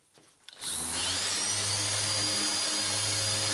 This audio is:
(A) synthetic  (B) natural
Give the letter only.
B